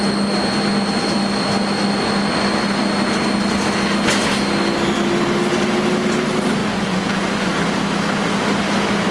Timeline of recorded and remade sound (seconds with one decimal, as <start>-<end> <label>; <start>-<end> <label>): 0.0-6.6 recorded; 6.6-7.5 remade; 7.5-9.1 recorded